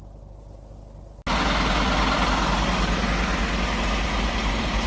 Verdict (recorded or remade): recorded